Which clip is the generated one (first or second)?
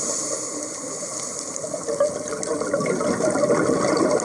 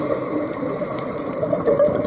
second